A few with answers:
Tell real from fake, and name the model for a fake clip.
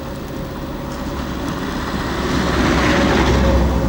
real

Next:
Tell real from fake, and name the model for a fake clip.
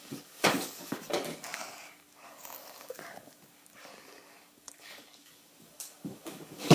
fake, codec, DAC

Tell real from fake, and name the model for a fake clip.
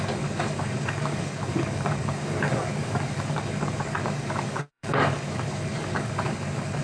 fake, codec, DAC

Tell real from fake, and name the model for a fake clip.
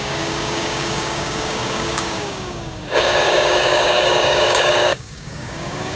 fake, codec, DAC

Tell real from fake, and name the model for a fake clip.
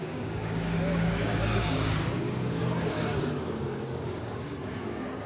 fake, codec, DAC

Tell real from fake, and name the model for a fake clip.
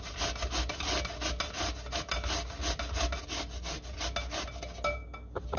real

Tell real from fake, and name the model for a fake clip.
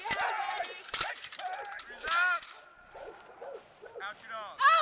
real